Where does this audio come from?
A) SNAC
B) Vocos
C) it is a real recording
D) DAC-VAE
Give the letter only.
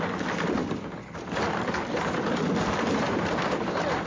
C